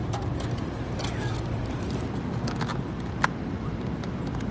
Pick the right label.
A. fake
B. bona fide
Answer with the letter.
B